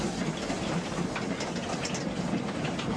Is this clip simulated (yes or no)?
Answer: no